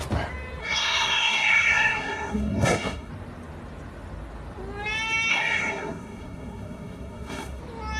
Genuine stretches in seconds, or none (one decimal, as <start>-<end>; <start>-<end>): 0.0-0.6; 3.1-5.3; 7.6-8.0